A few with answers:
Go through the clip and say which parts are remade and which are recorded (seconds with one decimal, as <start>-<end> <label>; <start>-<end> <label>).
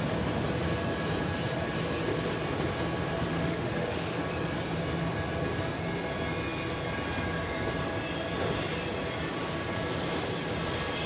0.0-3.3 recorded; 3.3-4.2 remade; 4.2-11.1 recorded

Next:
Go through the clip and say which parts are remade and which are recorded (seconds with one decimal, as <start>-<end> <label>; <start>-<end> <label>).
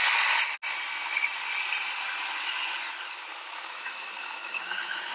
0.0-3.3 recorded; 3.3-5.1 remade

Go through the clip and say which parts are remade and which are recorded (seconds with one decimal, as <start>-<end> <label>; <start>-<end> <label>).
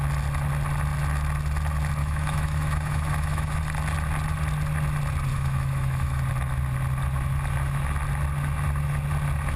0.0-2.0 recorded; 2.0-3.6 remade; 3.6-5.3 recorded; 5.3-6.2 remade; 6.2-9.6 recorded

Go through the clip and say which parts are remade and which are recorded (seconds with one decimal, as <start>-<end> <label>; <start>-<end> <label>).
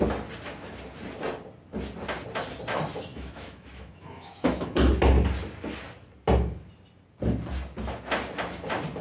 0.0-3.1 recorded; 3.1-4.9 remade; 4.9-9.0 recorded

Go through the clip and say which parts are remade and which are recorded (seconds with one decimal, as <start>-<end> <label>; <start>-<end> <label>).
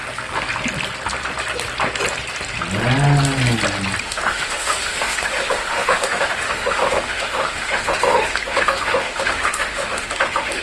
0.0-4.0 recorded; 4.0-10.6 remade